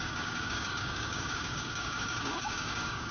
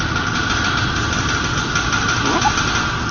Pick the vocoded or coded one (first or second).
first